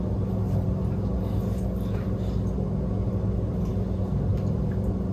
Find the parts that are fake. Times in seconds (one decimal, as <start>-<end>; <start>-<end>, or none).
none